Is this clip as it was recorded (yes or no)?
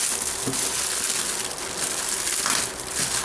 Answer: yes